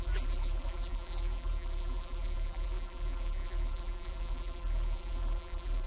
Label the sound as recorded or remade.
remade